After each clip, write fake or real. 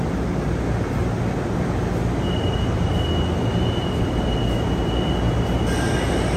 real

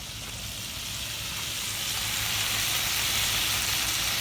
real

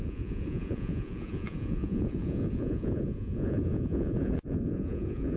fake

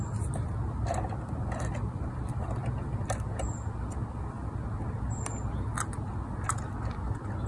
real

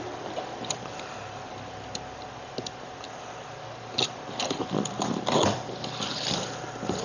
real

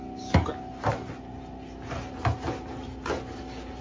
real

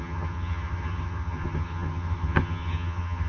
fake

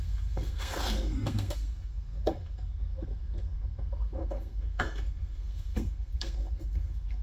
fake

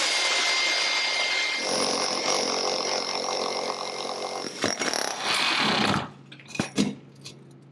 real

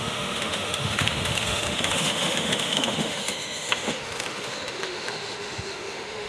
fake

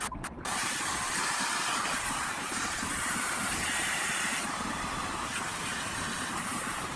fake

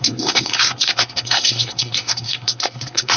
fake